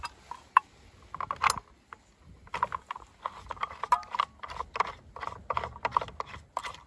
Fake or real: real